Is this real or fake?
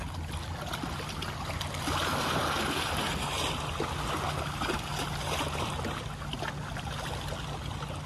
real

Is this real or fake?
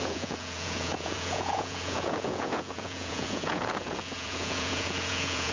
fake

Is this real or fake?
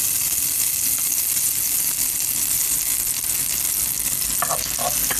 real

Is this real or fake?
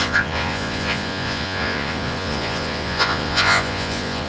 fake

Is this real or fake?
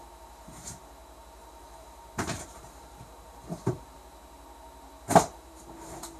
fake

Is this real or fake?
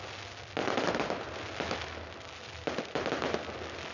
real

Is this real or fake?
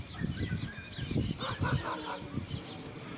real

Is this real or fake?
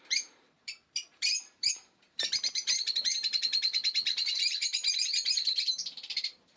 fake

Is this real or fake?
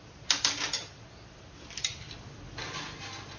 real